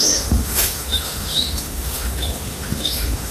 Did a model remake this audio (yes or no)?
yes